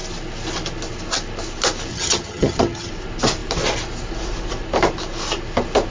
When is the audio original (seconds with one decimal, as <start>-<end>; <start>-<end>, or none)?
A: 0.0-1.9; 2.9-5.9